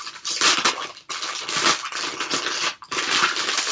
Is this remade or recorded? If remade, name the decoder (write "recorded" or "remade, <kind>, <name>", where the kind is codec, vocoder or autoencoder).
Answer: recorded